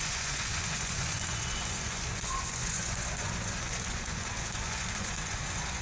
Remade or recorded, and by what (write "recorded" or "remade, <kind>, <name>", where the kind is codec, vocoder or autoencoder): remade, vocoder, Vocos